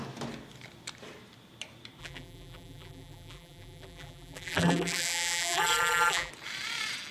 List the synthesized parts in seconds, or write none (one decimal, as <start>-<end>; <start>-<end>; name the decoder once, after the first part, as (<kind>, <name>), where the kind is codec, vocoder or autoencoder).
2.0-6.3 (vocoder, BigVGAN v2)